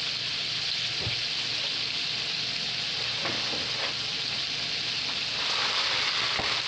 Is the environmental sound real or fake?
real